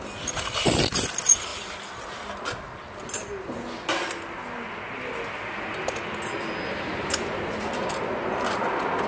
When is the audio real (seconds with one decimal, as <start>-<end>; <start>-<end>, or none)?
0.0-9.1